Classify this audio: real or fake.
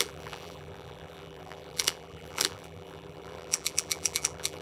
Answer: fake